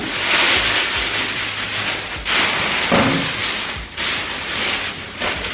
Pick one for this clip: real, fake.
real